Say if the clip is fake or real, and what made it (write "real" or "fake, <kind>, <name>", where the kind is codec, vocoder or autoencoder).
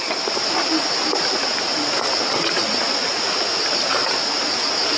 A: real